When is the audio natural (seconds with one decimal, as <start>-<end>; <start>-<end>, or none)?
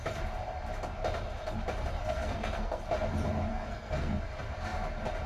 0.0-1.9; 2.8-3.5; 4.2-5.3